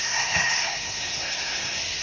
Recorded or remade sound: remade